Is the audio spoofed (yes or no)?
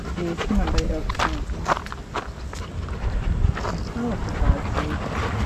no